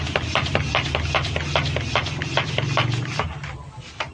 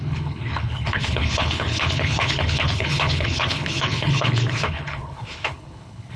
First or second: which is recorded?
first